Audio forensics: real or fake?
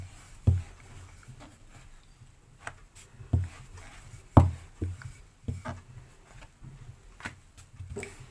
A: real